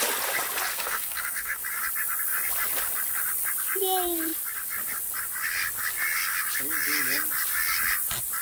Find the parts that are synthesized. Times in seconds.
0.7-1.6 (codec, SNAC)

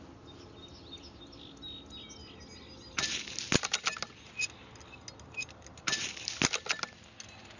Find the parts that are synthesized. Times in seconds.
none

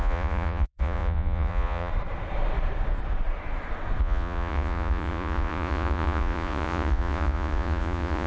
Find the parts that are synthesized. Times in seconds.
0.0-1.9 (vocoder, Vocos); 4.0-8.3

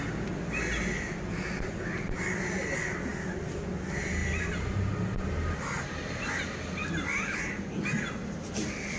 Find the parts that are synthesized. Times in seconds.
none

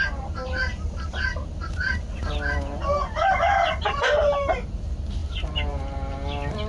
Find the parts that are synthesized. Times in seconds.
none

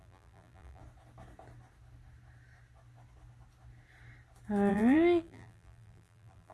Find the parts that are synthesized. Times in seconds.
0.0-0.8 (vocoder, BigVGAN v2); 4.7-6.5